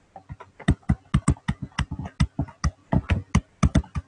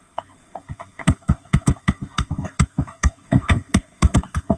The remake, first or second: second